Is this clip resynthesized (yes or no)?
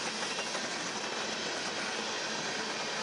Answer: no